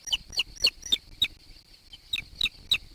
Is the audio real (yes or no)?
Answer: yes